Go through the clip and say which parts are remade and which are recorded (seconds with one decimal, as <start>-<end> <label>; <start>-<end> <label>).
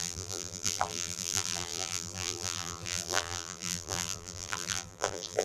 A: 0.0-5.4 remade